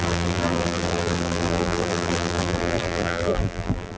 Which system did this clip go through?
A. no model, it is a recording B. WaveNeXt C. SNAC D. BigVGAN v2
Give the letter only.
D